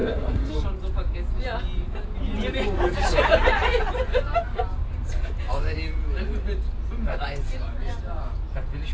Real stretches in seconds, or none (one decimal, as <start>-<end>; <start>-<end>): 0.5-8.9